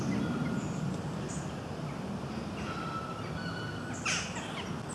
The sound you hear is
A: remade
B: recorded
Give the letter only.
B